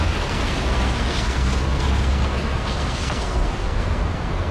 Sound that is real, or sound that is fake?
fake